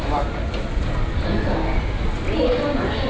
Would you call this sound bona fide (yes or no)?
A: yes